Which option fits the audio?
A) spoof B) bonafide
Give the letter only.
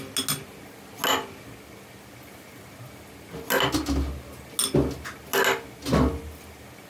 B